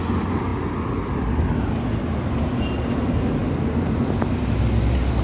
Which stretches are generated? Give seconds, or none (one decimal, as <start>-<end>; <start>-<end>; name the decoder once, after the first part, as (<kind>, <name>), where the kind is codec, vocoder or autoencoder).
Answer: none